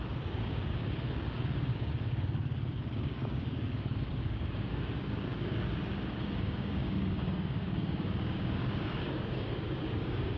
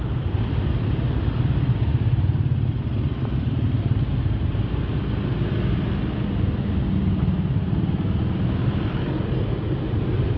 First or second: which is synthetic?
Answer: first